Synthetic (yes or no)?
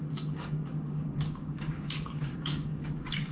yes